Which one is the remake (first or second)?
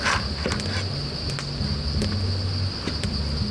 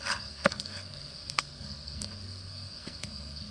second